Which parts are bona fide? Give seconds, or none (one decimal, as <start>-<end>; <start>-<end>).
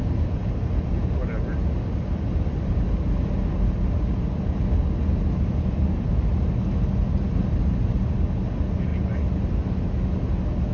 0.0-10.7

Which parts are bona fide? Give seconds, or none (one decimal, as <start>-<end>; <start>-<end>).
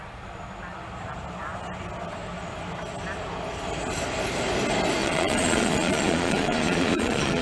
0.0-5.0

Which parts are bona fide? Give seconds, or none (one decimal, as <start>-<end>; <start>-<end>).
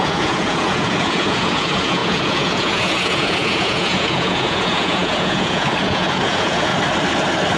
6.7-7.6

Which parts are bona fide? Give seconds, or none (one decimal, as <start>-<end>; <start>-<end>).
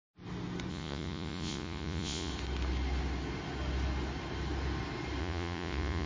0.0-0.7; 2.3-5.2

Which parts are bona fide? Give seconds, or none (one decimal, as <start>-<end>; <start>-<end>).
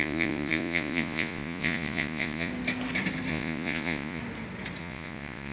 2.5-3.3; 4.2-4.8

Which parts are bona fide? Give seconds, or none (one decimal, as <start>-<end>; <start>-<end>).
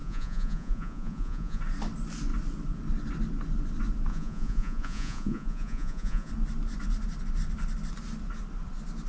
1.6-4.1; 6.3-9.1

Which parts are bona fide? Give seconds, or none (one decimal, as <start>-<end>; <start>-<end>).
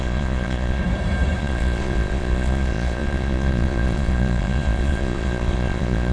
0.8-1.4